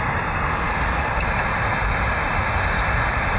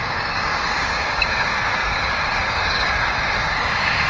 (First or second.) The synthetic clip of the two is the second